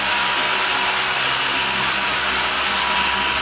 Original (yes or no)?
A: yes